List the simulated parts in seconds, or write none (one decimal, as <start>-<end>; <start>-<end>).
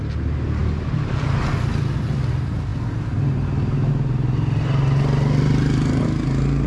none